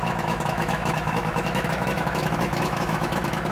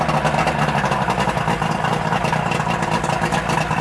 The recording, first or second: second